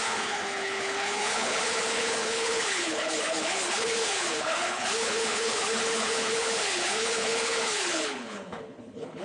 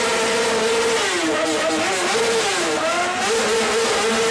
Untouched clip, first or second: second